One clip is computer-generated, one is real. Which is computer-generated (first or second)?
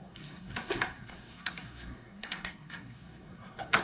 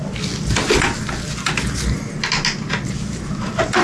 first